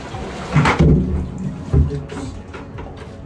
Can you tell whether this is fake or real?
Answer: real